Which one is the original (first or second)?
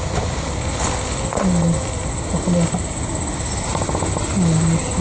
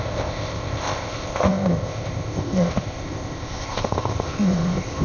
first